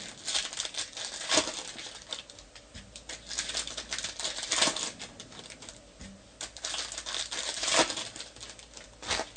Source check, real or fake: real